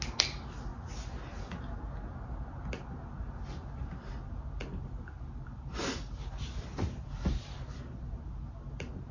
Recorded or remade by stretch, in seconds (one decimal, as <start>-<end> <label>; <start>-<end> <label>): 0.0-9.1 recorded